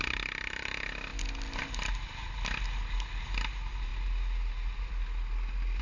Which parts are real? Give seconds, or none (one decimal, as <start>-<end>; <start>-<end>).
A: 0.0-5.8